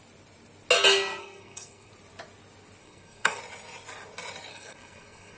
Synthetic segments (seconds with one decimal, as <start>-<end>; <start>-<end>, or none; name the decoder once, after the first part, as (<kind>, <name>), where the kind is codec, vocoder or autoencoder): 1.2-1.9 (codec, SNAC); 2.8-3.4; 4.5-5.4